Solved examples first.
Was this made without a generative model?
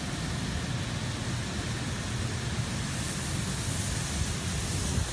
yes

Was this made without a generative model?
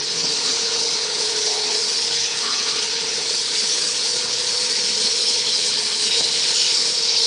no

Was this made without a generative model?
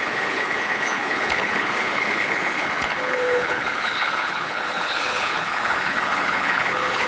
no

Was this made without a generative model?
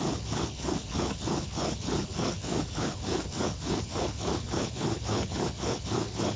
no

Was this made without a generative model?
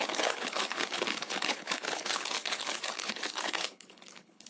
no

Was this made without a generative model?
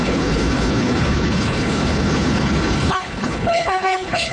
no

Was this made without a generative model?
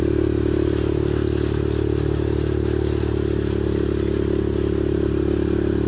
yes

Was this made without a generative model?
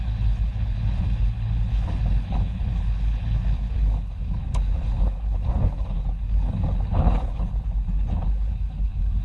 no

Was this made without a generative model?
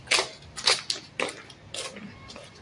yes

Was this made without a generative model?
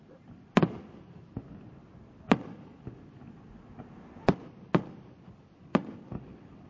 yes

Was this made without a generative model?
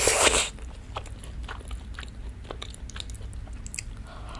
yes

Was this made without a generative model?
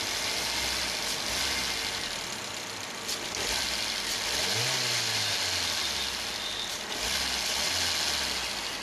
yes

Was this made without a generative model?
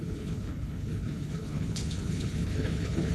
no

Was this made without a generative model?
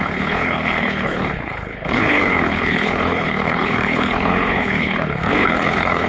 no